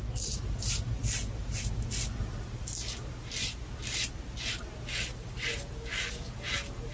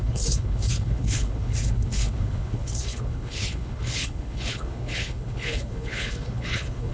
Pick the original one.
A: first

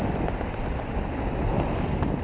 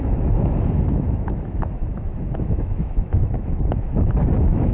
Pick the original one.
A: first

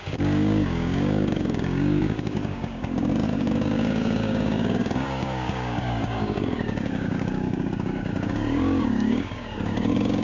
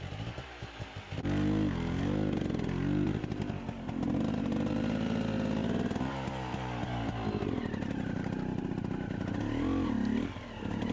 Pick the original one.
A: second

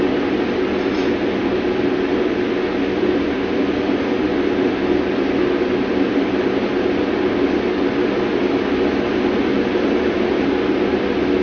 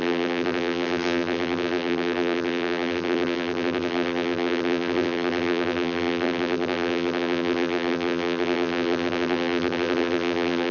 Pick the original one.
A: first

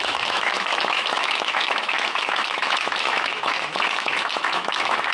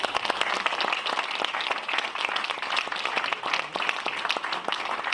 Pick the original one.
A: second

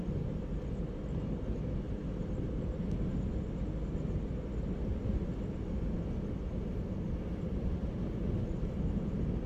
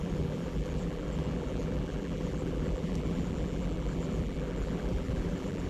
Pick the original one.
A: first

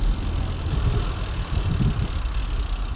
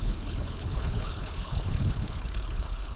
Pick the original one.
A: first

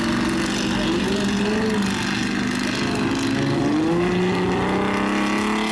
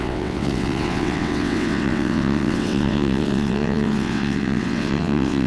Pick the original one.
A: first